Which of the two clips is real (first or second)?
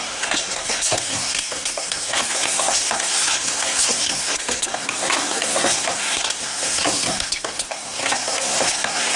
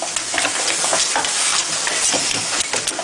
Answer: second